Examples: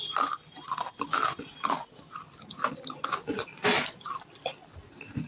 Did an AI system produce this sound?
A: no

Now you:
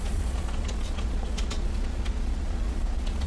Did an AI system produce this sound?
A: yes